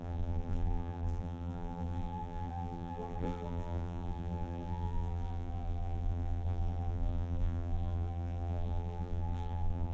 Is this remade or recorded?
remade